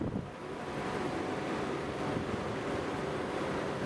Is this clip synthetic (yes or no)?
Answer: no